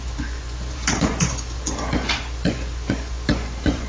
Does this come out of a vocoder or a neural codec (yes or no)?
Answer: yes